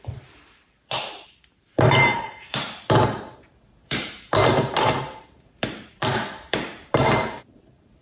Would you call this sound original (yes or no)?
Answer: no